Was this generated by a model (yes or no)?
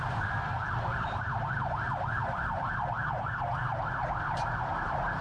yes